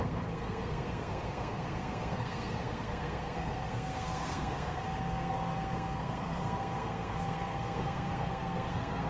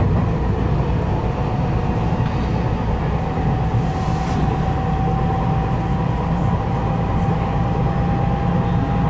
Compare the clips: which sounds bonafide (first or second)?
second